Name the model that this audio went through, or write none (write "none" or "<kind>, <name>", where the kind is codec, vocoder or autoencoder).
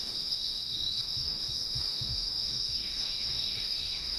codec, DAC